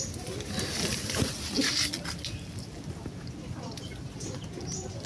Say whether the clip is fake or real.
real